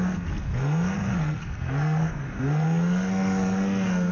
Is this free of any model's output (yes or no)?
no